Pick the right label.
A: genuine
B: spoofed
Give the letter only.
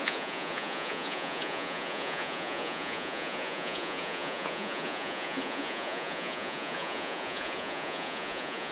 B